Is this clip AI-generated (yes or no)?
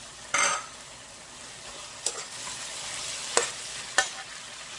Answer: no